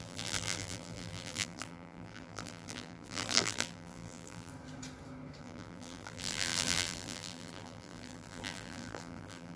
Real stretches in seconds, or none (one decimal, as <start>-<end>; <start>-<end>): 4.5-5.4